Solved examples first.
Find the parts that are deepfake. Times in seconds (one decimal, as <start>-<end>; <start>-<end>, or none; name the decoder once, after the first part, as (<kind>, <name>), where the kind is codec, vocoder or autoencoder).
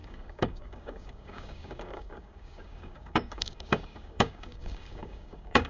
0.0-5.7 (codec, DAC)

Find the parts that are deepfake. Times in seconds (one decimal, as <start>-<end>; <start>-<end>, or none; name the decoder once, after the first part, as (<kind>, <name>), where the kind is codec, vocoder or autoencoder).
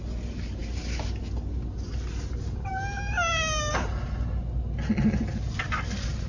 none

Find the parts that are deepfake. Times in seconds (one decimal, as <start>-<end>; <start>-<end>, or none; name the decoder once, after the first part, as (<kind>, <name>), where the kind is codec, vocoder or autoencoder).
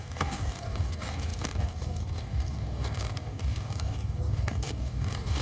0.0-5.4 (codec, DAC)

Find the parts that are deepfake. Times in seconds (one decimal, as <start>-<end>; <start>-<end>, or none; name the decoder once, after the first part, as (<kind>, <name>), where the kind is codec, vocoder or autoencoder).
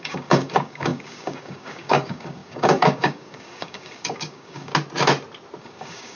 0.0-4.7 (codec, DAC); 5.6-6.2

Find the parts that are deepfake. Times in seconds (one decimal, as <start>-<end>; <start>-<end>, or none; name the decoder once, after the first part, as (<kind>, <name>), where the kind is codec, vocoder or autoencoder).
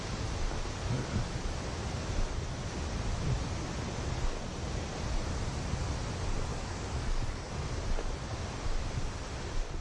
6.5-7.5 (codec, DAC)